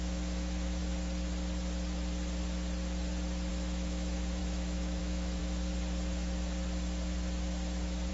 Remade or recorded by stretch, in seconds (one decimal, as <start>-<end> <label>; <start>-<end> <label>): 0.0-0.8 remade; 0.8-3.5 recorded; 3.5-5.4 remade; 5.4-8.1 recorded

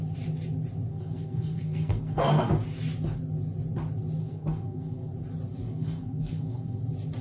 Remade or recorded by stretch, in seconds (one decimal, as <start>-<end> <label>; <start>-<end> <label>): 0.0-0.9 recorded; 0.9-2.5 remade; 2.5-4.2 recorded; 4.2-5.1 remade; 5.1-5.6 recorded; 5.6-6.8 remade; 6.8-7.2 recorded

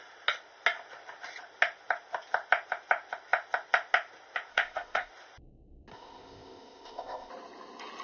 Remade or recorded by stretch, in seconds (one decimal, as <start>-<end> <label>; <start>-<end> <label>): 0.0-4.5 recorded; 4.5-5.1 remade; 5.1-5.9 recorded; 5.9-7.3 remade; 7.3-8.0 recorded